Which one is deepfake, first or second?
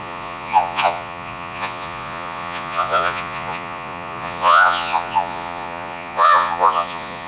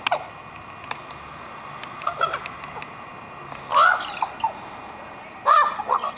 first